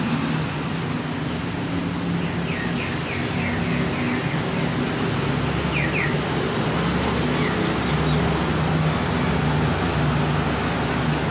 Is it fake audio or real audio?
real